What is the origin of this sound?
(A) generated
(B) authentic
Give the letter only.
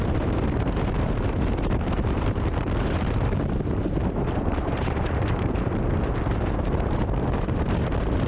A